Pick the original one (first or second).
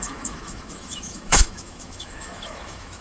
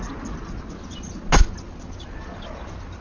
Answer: second